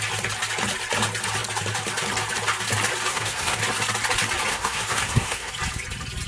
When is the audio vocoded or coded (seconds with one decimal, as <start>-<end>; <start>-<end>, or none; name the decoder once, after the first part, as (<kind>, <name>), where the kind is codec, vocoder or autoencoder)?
3.1-3.6 (codec, SNAC); 4.5-5.5